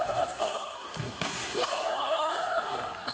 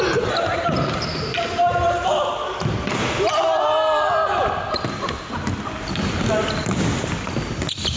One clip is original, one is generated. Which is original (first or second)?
second